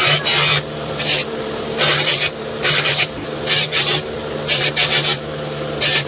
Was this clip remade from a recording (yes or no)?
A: yes